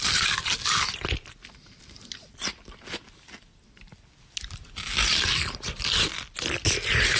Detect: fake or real real